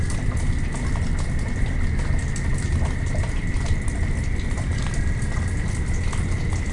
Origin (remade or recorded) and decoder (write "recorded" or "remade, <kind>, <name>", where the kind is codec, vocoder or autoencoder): recorded